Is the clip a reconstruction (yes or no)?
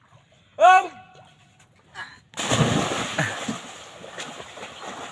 no